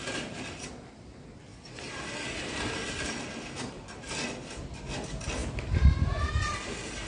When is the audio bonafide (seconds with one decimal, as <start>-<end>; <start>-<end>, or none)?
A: 0.0-7.1